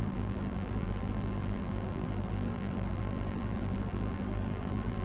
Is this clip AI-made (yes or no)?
yes